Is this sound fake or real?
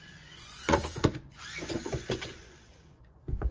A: fake